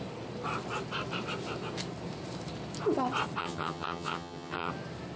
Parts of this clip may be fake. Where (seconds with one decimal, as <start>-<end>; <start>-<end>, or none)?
3.4-4.7